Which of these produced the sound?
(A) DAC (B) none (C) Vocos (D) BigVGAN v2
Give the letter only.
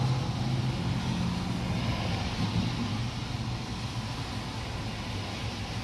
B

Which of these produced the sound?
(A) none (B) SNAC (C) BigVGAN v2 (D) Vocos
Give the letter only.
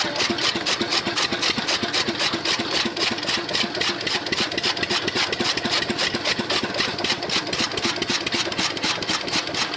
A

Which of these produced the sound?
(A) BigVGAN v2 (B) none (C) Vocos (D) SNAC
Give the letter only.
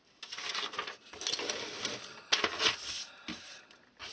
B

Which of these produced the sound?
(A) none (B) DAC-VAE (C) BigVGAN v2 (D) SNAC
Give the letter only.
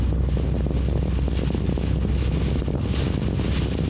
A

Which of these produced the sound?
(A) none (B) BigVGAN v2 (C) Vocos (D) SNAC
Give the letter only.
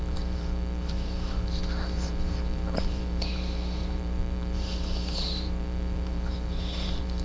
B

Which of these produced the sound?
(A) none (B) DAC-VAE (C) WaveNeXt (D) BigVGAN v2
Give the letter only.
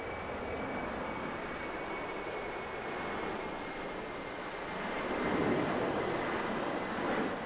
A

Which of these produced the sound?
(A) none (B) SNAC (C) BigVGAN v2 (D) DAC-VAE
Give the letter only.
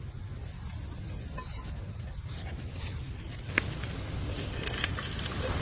A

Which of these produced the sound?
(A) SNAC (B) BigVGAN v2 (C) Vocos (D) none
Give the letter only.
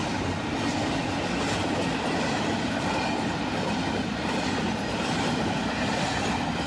D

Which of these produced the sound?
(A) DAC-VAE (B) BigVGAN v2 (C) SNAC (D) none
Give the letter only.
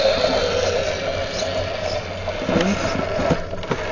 D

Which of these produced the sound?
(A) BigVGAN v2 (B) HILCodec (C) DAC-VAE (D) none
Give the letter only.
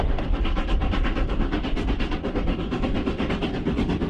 D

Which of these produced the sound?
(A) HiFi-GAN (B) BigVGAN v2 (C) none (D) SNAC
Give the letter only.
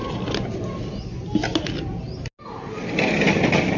C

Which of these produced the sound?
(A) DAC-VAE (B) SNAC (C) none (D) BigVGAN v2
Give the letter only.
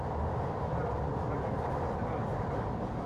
C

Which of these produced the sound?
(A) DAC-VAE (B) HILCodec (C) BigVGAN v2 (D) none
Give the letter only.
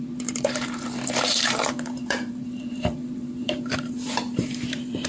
C